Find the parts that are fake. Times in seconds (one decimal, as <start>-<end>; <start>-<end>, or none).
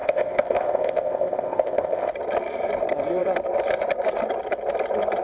0.0-2.1